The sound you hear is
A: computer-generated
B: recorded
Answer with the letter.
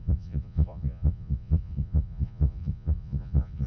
A